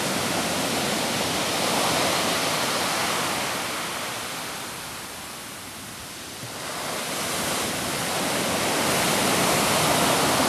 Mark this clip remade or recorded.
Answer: recorded